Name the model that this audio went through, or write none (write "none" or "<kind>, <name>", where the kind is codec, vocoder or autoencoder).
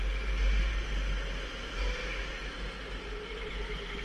none